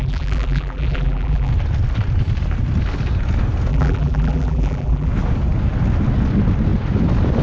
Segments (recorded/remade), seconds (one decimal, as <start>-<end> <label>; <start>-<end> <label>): 0.0-1.5 remade; 1.5-3.7 recorded; 3.7-5.1 remade; 5.1-7.4 recorded